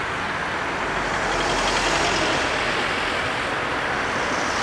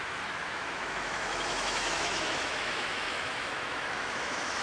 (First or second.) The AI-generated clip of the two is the second